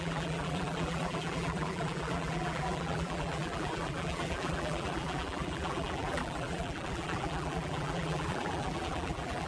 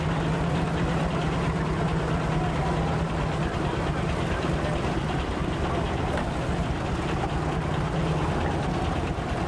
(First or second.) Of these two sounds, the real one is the second